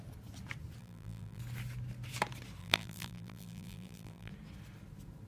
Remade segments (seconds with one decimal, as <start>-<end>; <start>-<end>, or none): 0.8-1.4; 2.6-4.3